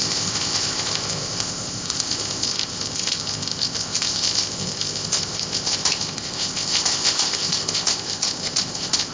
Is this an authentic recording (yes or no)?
no